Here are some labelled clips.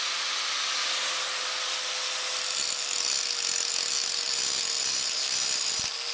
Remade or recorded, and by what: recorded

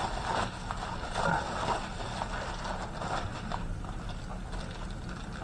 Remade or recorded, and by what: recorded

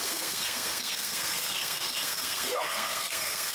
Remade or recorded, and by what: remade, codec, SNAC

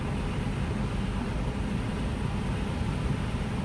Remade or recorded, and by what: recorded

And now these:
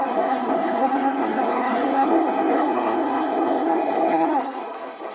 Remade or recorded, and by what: remade, codec, SNAC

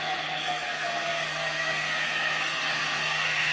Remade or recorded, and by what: remade, codec, SNAC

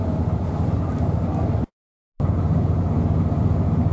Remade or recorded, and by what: recorded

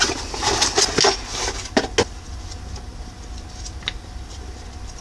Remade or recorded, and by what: recorded